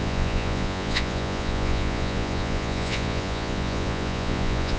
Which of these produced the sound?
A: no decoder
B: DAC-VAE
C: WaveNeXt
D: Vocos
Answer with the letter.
D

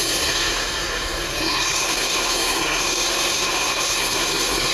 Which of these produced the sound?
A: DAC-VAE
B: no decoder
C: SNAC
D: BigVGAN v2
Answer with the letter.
C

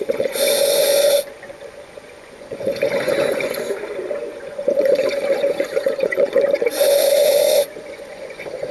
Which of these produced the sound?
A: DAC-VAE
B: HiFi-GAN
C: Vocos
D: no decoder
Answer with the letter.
C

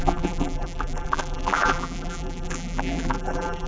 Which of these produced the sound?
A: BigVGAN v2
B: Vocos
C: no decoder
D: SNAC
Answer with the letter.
A